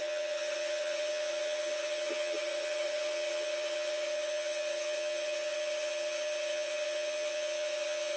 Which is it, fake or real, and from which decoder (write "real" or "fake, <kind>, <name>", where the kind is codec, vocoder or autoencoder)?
fake, vocoder, HiFi-GAN